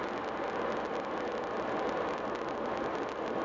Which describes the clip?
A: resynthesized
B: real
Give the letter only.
B